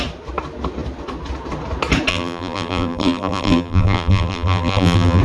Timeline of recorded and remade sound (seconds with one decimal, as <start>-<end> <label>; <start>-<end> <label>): 0.0-2.1 recorded; 2.1-5.2 remade